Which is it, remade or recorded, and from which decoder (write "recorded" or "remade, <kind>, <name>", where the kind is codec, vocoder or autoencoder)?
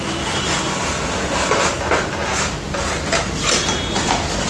recorded